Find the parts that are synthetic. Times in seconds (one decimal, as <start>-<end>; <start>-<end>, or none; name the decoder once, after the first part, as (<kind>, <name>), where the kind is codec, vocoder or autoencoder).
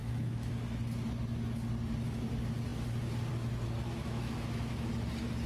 0.0-0.5 (autoencoder, DAC-VAE); 4.0-4.9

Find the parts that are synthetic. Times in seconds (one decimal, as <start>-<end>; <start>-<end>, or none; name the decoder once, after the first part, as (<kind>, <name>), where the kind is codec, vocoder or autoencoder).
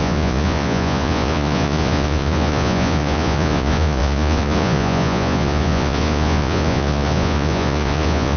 0.0-8.4 (vocoder, Vocos)